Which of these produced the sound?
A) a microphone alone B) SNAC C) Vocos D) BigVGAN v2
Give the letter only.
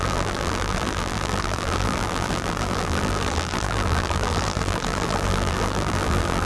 D